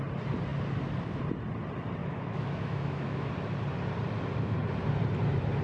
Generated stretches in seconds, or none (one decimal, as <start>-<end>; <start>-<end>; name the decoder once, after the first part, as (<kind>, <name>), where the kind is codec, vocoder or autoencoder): 2.0-3.3 (autoencoder, DAC-VAE)